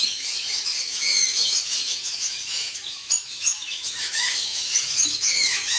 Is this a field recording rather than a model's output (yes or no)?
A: no